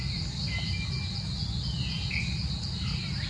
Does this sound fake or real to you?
real